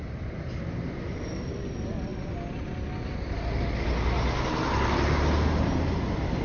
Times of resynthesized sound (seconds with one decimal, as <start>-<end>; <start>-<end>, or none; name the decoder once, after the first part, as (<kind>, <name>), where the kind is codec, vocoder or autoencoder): none